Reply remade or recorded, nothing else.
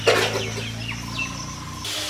recorded